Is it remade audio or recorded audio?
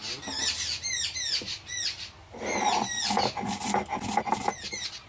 recorded